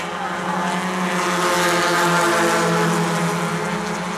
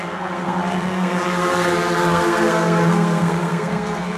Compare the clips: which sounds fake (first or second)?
second